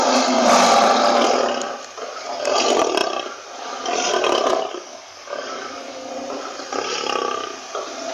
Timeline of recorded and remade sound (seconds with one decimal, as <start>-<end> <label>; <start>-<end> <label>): 0.0-4.5 recorded; 4.5-6.1 remade; 6.1-8.1 recorded